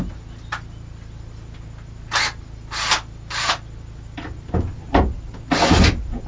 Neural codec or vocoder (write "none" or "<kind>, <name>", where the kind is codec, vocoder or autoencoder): none